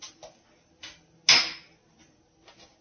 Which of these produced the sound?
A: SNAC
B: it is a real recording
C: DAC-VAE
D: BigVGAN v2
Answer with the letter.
B